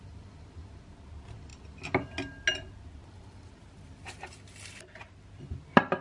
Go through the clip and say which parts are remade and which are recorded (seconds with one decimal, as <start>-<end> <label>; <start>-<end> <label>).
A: 0.0-6.0 recorded